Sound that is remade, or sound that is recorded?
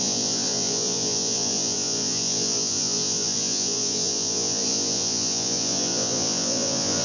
remade